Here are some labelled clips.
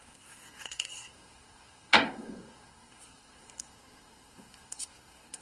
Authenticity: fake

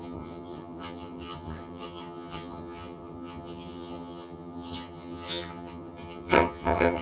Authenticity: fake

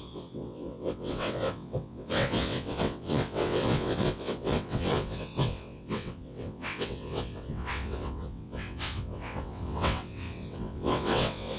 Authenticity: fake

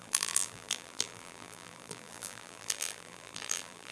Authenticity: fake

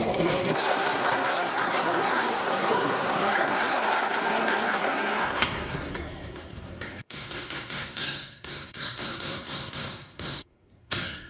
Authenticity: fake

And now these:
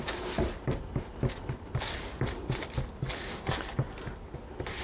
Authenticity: real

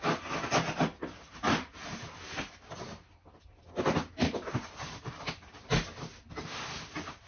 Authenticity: real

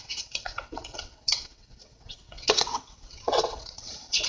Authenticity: fake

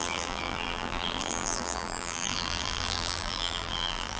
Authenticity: fake